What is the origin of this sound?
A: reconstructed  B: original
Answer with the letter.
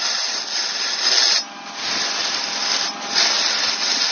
B